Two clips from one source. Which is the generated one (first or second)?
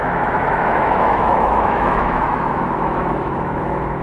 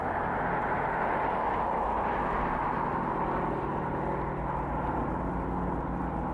first